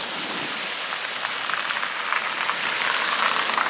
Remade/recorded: recorded